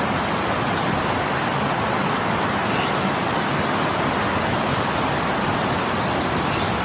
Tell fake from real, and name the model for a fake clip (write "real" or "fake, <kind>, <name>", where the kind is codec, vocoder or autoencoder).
real